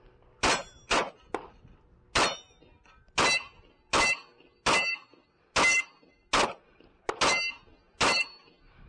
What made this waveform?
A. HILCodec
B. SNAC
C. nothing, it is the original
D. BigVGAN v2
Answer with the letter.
C